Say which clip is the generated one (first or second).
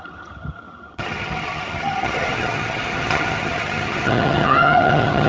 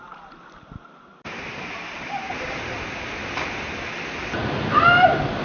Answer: first